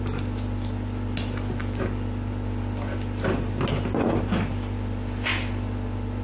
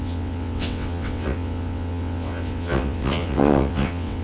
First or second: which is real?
first